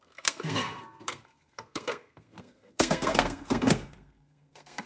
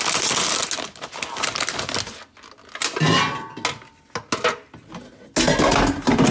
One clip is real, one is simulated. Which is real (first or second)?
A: second